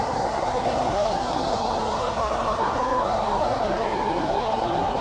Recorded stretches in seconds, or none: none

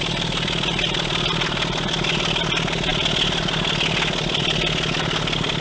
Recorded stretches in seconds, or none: 0.0-5.6

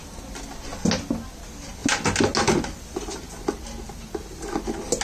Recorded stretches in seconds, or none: 0.0-5.0

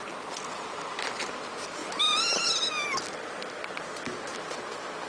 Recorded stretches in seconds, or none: 0.0-5.1

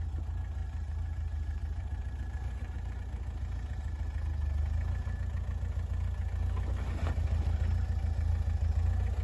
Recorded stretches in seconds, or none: 0.0-0.6; 3.0-9.2

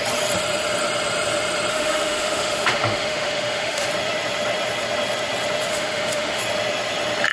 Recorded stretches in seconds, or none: 0.0-1.7; 3.9-5.7; 6.4-7.3